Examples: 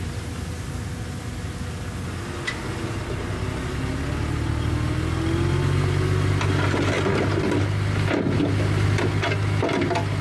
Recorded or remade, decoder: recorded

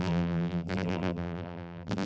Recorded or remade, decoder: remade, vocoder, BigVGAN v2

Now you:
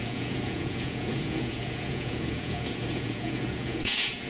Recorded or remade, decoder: remade, vocoder, Vocos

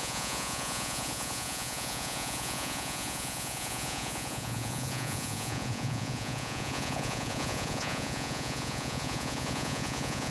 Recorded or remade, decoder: remade, vocoder, Vocos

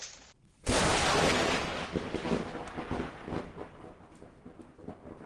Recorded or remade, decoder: recorded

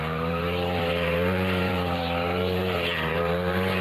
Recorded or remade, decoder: remade, vocoder, BigVGAN v2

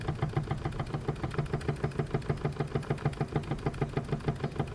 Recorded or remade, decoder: recorded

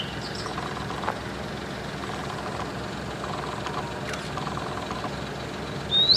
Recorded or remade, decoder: recorded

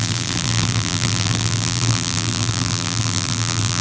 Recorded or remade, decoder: remade, vocoder, BigVGAN v2